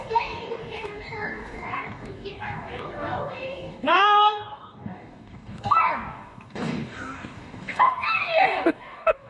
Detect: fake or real fake